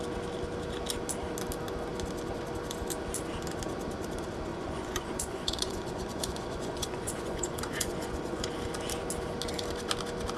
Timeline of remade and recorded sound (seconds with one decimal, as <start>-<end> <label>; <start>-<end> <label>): 0.0-4.5 recorded; 4.5-8.5 remade; 8.5-10.4 recorded

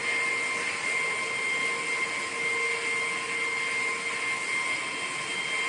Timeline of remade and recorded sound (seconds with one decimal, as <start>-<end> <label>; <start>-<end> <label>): 0.0-5.7 recorded

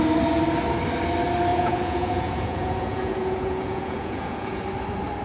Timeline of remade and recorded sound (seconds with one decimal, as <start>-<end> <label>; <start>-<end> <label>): 0.0-1.5 recorded; 1.5-4.6 remade; 4.6-5.2 recorded

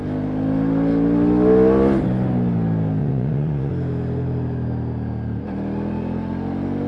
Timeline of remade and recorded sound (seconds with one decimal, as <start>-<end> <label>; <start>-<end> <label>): 0.0-3.0 recorded; 3.0-3.7 remade; 3.7-6.9 recorded

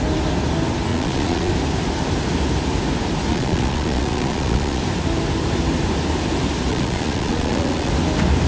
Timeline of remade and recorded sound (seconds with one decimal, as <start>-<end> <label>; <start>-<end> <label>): 0.0-0.9 recorded; 0.9-1.5 remade; 1.5-3.3 recorded; 3.3-4.8 remade; 4.8-6.7 recorded; 6.7-7.9 remade; 7.9-8.5 recorded

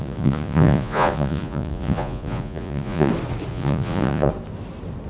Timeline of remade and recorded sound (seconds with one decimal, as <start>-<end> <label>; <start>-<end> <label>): 0.0-3.1 remade; 3.1-3.5 recorded; 3.5-4.3 remade; 4.3-5.1 recorded

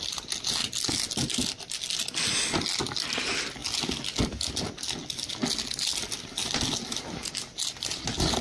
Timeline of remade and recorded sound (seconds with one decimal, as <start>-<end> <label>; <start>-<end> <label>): 0.0-8.4 recorded

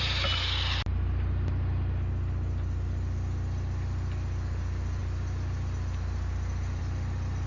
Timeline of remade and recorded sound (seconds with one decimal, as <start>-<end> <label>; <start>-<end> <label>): 0.0-7.5 recorded